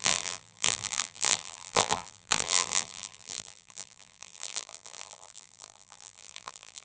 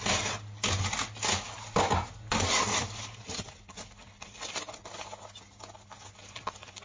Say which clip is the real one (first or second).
second